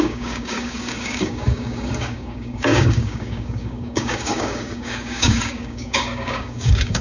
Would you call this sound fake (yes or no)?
yes